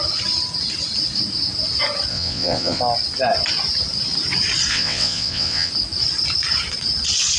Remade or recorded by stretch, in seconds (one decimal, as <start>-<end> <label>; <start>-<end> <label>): 0.0-2.1 recorded; 2.1-2.8 remade; 2.8-4.7 recorded; 4.7-5.7 remade; 5.7-7.4 recorded